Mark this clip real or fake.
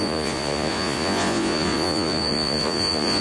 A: fake